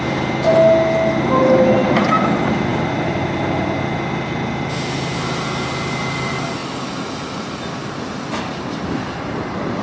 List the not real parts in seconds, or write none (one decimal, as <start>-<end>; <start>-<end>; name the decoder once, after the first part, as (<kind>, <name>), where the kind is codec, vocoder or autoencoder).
none